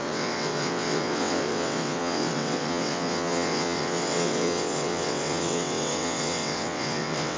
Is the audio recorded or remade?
remade